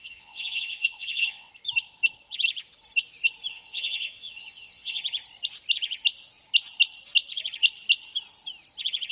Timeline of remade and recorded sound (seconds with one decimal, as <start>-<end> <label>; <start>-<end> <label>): 0.0-1.5 remade; 1.5-3.5 recorded; 3.5-5.0 remade; 5.0-9.1 recorded